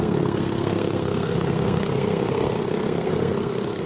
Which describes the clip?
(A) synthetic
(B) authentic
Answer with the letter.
A